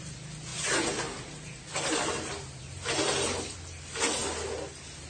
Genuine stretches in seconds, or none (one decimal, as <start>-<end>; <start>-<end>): 0.0-5.1